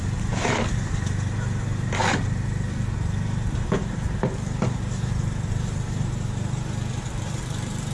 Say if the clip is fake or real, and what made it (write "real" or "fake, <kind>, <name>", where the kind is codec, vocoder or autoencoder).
fake, vocoder, BigVGAN v2